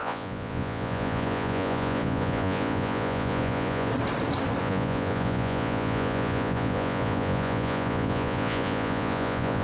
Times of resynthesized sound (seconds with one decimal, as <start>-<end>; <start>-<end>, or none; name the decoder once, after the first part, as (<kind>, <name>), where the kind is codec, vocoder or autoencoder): 0.0-3.9 (vocoder, Vocos); 4.6-9.6